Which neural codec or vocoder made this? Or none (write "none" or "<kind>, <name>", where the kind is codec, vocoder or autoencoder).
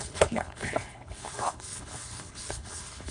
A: codec, HILCodec